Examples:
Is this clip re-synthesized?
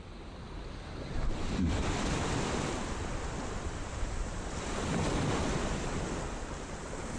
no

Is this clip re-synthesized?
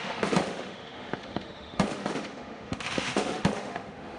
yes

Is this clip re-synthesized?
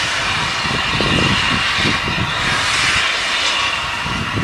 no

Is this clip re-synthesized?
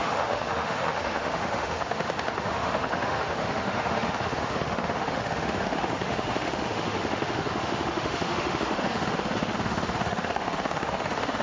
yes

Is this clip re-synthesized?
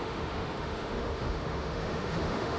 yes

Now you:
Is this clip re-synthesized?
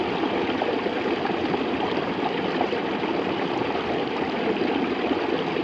no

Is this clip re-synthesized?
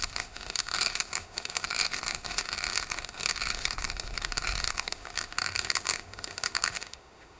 yes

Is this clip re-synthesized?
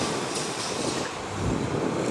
no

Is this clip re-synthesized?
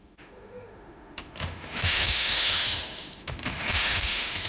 yes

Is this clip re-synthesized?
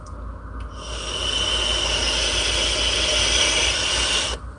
no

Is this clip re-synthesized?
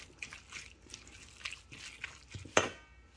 no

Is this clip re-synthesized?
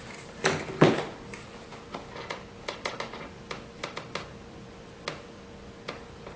no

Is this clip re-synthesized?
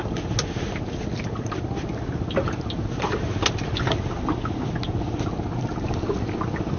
no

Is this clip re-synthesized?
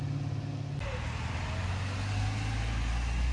no